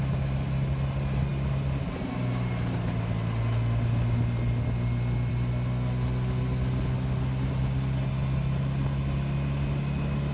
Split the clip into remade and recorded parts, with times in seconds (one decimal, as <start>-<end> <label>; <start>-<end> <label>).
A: 0.0-10.3 recorded